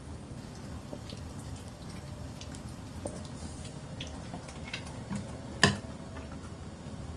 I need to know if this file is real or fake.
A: real